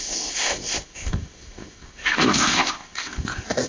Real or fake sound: fake